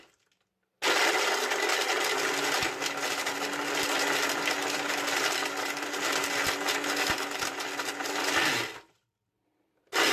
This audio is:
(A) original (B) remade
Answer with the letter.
A